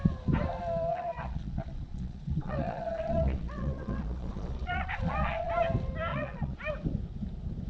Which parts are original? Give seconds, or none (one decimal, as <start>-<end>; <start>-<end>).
0.0-0.9; 5.5-6.1; 6.6-7.7